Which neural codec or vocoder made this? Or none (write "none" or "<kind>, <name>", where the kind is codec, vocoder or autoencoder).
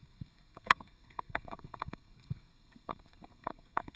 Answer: codec, SNAC